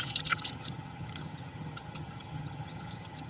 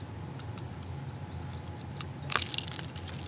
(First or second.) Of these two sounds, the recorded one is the second